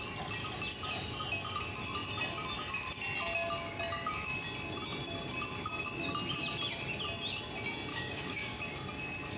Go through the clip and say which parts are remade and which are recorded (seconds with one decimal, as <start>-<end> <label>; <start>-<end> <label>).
0.0-7.9 recorded; 7.9-8.6 remade; 8.6-9.4 recorded